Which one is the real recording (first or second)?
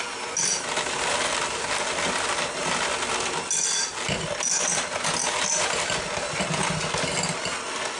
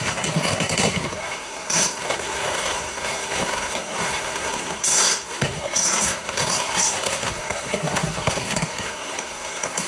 first